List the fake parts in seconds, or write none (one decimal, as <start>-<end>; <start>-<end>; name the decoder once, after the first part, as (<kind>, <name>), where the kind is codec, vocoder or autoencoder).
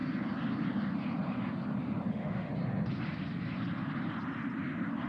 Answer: 2.1-2.5 (autoencoder, DAC-VAE)